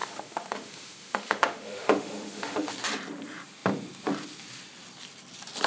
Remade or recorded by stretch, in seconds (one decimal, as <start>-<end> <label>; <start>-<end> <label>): 0.0-2.7 remade; 2.7-5.7 recorded